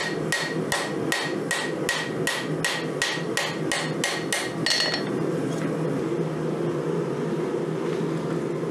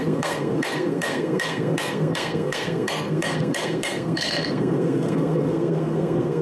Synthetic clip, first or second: second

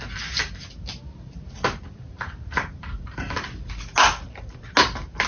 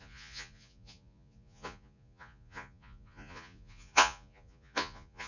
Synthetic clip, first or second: second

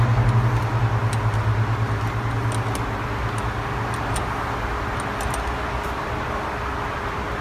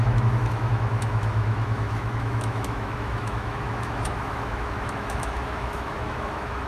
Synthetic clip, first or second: second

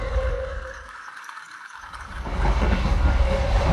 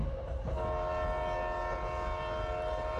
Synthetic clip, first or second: first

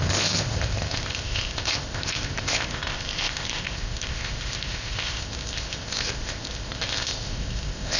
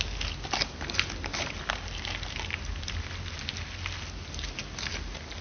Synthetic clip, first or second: first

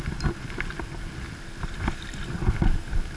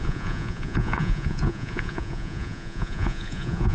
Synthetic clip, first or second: second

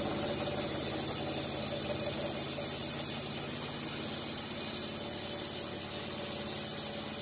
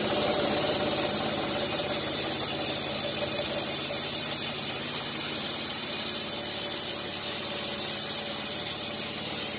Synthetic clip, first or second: second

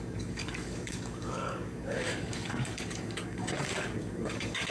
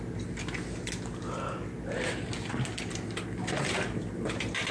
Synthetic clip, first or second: first